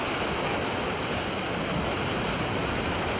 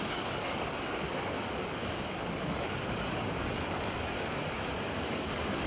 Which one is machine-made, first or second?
second